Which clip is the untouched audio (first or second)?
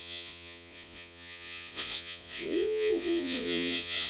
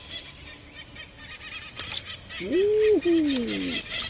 second